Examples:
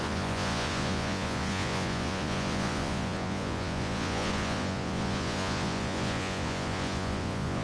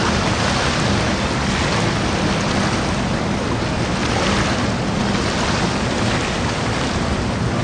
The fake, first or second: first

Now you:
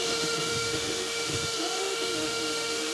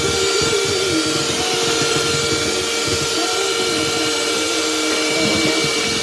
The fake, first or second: first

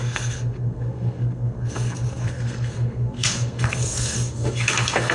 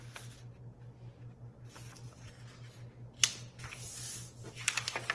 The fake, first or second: first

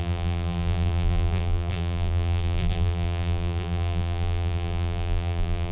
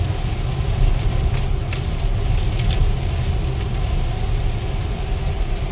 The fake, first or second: first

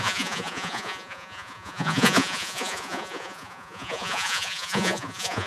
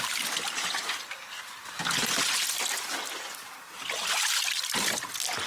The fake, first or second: first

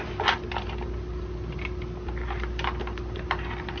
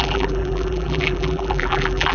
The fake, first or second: second